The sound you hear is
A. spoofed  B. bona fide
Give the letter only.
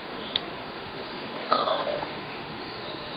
A